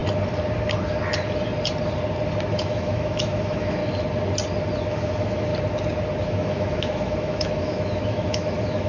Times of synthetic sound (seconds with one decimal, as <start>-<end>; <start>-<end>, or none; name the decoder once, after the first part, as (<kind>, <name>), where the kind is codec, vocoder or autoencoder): 2.5-3.8 (autoencoder, DAC-VAE); 4.8-5.5; 6.2-8.9